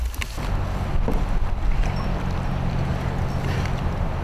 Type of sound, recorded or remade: recorded